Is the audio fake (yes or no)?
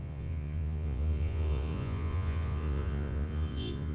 yes